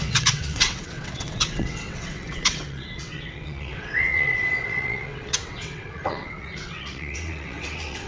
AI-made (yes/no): yes